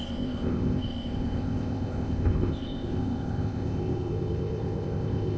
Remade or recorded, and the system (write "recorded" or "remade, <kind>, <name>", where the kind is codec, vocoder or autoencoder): remade, codec, ZipCodec